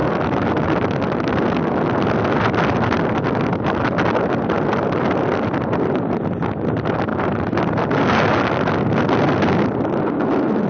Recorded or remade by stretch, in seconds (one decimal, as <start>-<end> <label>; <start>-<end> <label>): 0.0-10.7 recorded